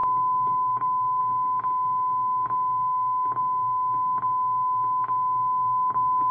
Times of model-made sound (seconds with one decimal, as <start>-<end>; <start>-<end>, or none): 0.0-1.2